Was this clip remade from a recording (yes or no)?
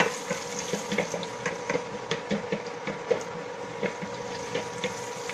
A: no